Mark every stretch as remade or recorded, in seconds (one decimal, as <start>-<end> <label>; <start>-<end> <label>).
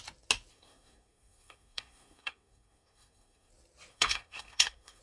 0.0-0.5 recorded; 0.5-3.5 remade; 3.5-3.9 recorded; 3.9-5.0 remade